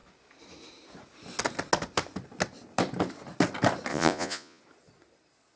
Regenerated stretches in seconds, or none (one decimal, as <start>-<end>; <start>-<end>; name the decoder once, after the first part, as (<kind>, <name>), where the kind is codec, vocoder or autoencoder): 3.9-4.6 (vocoder, Vocos)